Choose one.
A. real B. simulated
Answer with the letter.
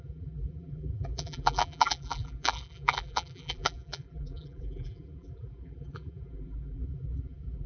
B